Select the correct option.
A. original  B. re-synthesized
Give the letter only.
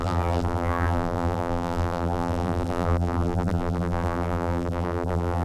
B